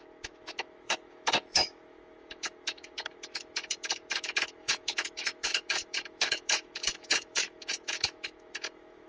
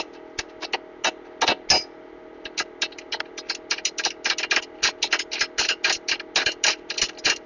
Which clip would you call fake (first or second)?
first